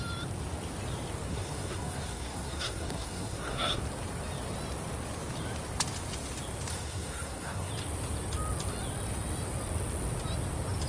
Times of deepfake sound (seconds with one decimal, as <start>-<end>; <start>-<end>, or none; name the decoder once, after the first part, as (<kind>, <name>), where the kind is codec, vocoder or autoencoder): 1.3-3.8 (codec, SNAC); 6.7-7.7